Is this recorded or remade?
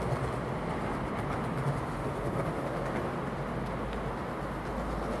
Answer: recorded